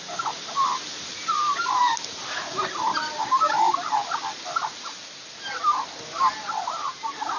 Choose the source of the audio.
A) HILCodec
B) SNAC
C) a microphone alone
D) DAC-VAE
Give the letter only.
C